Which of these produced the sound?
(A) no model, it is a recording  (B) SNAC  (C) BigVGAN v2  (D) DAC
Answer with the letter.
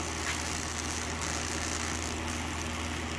A